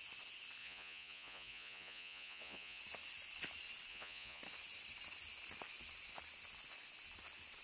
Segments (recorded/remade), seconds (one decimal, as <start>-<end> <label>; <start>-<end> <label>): 0.0-0.6 recorded; 0.6-2.8 remade; 2.8-3.9 recorded; 3.9-4.4 remade; 4.4-7.6 recorded